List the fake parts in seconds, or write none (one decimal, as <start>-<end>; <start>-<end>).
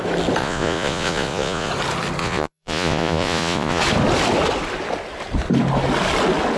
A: 0.4-1.7; 2.2-3.8